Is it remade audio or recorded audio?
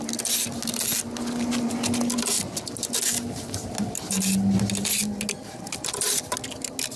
recorded